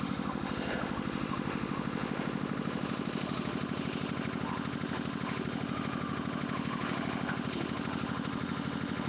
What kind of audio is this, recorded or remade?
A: remade